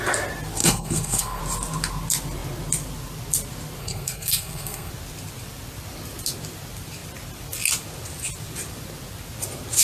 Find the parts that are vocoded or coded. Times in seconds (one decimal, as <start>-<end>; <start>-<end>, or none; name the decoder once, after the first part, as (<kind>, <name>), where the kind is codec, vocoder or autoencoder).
0.6-1.4 (codec, SNAC); 3.8-4.9